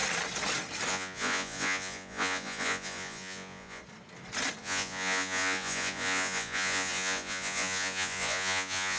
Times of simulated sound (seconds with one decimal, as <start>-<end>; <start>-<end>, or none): 0.9-3.8; 4.6-9.0